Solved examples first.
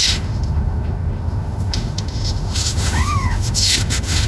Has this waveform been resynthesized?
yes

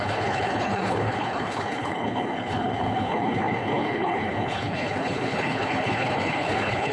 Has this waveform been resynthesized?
yes